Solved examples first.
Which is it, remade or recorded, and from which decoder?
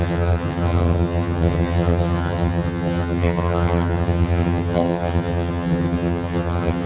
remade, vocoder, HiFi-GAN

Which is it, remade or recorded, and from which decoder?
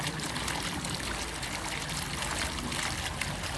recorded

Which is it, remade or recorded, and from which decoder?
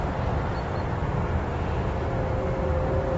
recorded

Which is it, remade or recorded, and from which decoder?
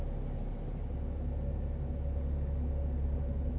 recorded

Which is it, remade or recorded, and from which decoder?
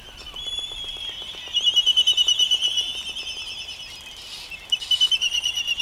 recorded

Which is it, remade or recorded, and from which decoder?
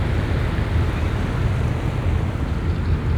recorded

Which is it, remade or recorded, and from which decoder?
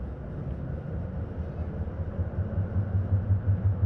recorded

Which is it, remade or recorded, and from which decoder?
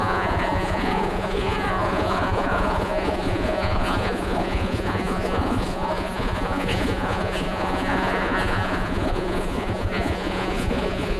remade, vocoder, Vocos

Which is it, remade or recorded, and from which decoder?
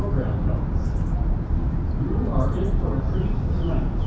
recorded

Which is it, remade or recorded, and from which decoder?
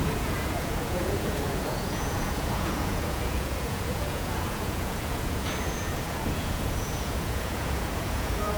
remade, vocoder, Vocos